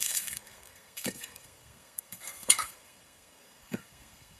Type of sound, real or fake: fake